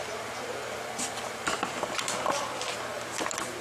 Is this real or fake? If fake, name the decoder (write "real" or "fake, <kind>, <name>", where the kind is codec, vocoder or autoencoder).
fake, vocoder, BigVGAN v2